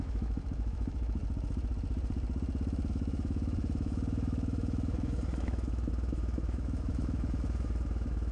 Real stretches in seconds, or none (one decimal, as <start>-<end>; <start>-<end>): 1.2-2.9